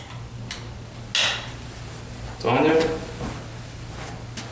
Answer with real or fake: real